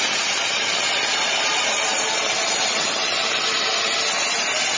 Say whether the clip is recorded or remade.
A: recorded